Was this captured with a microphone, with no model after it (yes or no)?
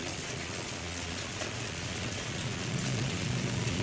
no